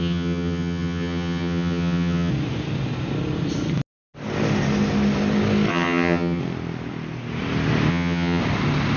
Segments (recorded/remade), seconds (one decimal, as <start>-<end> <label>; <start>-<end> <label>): 0.0-2.3 remade; 2.3-5.7 recorded; 5.7-6.4 remade; 6.4-7.9 recorded; 7.9-8.4 remade; 8.4-9.0 recorded

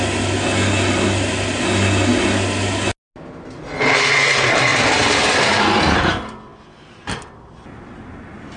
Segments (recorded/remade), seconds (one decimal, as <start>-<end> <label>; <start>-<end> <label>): 0.0-4.7 recorded; 4.7-5.6 remade; 5.6-6.5 recorded; 6.5-7.3 remade; 7.3-8.6 recorded